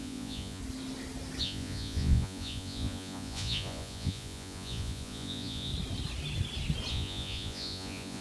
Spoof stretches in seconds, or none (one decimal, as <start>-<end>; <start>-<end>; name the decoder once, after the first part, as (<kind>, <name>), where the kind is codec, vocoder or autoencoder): 0.0-0.6 (vocoder, Vocos); 1.4-5.7; 6.9-8.2